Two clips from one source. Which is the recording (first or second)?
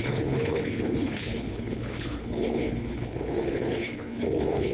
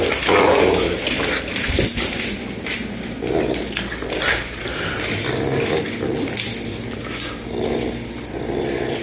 second